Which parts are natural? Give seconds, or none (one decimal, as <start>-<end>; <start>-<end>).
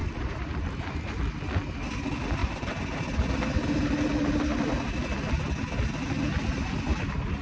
1.2-2.4; 4.4-7.4